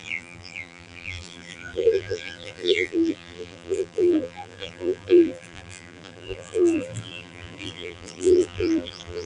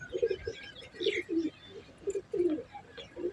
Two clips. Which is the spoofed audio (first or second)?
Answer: first